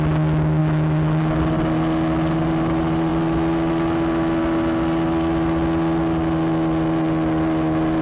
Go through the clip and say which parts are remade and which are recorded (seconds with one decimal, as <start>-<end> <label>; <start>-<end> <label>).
0.0-0.6 recorded; 0.6-1.4 remade; 1.4-8.0 recorded